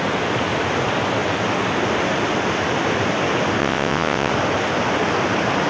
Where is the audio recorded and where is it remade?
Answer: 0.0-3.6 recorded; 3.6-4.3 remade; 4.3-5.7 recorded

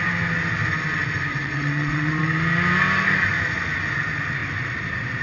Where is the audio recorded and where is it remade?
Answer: 0.0-1.3 recorded; 1.3-2.2 remade; 2.2-5.2 recorded

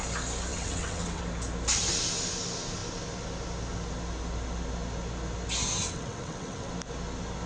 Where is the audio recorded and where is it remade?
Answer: 0.0-0.5 recorded; 0.5-1.2 remade; 1.2-5.8 recorded; 5.8-6.7 remade; 6.7-7.5 recorded

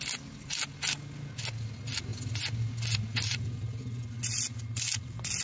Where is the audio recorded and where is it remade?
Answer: 0.0-5.4 recorded

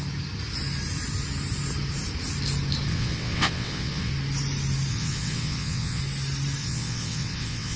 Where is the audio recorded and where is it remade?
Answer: 0.0-2.9 recorded; 2.9-4.1 remade; 4.1-4.9 recorded; 4.9-6.0 remade; 6.0-6.6 recorded; 6.6-7.8 remade

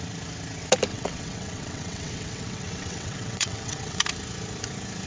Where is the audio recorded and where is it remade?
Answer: 0.0-0.9 recorded; 0.9-4.0 remade; 4.0-5.1 recorded

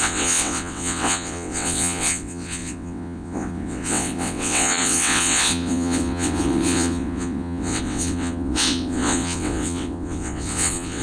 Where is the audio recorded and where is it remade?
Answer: 0.0-11.0 remade

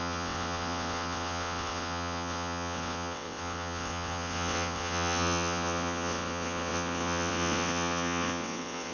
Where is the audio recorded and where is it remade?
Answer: 0.0-8.9 remade